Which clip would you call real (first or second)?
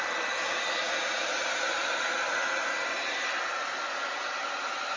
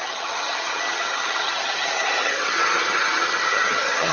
first